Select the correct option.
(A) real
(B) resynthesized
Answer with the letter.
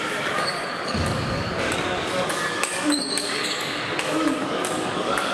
B